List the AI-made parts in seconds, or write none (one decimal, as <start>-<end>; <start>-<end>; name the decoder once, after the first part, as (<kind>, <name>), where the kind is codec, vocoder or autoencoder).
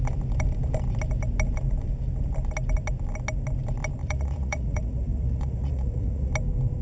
4.0-6.3 (vocoder, Vocos)